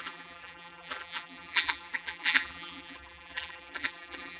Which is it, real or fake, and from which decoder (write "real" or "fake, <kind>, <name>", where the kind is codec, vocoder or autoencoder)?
fake, vocoder, BigVGAN v2